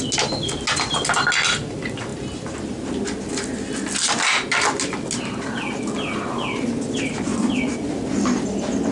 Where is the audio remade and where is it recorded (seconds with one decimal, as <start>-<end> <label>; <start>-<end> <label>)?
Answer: 0.0-8.9 recorded